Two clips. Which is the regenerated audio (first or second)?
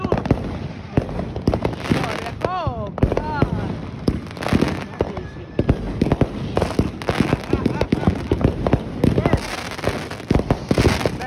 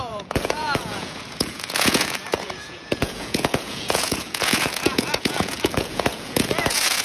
second